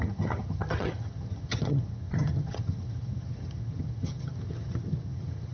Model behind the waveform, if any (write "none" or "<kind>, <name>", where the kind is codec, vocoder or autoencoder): vocoder, HiFi-GAN